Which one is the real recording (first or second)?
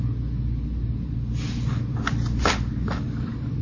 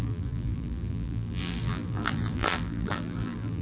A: first